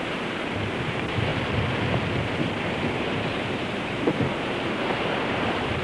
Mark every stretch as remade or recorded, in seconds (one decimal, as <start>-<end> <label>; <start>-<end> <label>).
0.0-1.3 remade; 1.3-2.9 recorded; 2.9-5.8 remade